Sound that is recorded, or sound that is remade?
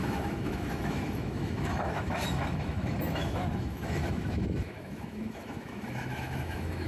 remade